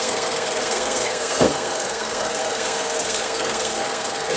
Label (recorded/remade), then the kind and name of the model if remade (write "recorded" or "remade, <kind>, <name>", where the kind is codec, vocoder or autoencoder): remade, codec, SNAC